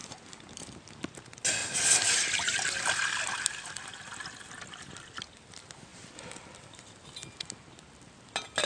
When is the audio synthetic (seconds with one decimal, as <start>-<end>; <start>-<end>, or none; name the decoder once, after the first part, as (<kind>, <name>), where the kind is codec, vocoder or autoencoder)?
1.6-2.6 (vocoder, BigVGAN v2); 5.9-6.9